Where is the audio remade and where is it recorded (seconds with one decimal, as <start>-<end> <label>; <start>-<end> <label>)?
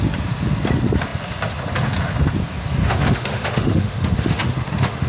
0.0-2.8 recorded; 2.8-5.1 remade